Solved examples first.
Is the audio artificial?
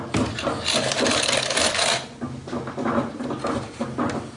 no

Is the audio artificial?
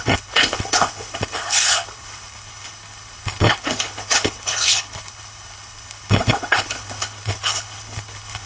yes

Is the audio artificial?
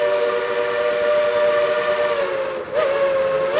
no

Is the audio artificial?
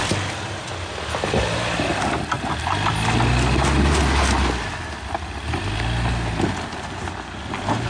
no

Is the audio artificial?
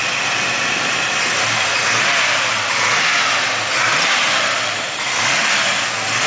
no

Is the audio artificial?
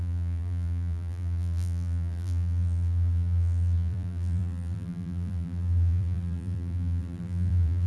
yes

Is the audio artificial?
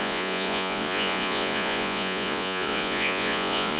yes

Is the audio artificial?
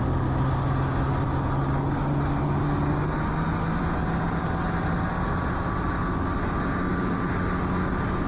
no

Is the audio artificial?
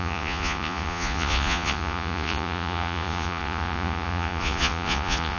yes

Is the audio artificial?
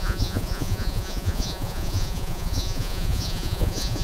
yes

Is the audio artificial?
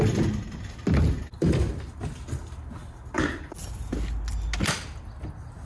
no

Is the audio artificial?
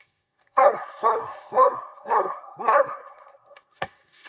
yes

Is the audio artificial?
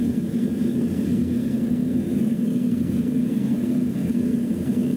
yes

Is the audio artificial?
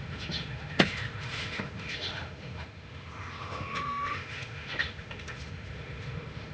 yes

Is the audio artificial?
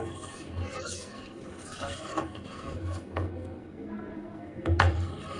yes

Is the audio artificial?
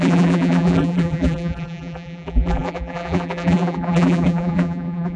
yes